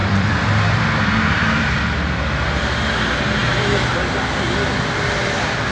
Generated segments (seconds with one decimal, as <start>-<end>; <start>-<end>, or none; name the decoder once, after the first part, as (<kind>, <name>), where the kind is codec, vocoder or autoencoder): 0.0-1.8 (vocoder, BigVGAN v2)